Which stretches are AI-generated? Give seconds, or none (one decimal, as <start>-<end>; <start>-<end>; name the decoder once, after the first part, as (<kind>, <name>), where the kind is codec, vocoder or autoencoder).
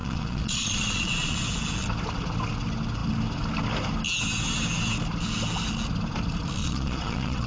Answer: 0.0-1.4 (vocoder, Vocos); 6.6-7.5